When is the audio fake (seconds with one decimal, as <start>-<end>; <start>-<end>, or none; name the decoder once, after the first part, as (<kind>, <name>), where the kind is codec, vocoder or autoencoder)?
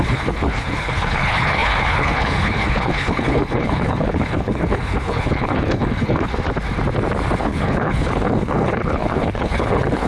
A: 0.0-6.3 (codec, HILCodec); 7.4-10.1